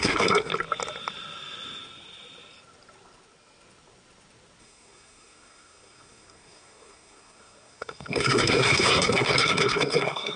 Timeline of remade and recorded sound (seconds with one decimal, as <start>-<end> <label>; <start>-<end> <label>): 0.0-0.5 remade; 0.5-4.6 recorded; 4.6-10.4 remade